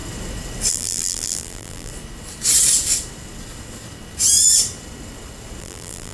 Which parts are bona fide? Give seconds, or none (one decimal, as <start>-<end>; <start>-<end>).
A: 0.0-0.7; 1.9-5.6